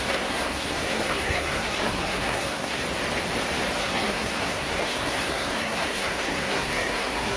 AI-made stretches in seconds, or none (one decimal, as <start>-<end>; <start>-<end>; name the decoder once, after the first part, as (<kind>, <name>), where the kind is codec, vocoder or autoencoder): 0.0-2.8 (codec, SNAC); 3.8-7.4